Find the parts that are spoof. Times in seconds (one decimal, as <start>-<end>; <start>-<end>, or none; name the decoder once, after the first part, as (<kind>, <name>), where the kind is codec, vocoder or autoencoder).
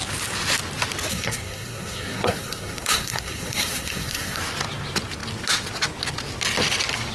1.1-4.4 (codec, SNAC)